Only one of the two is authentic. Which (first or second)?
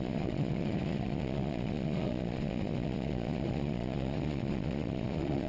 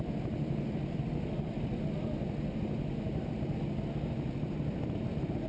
second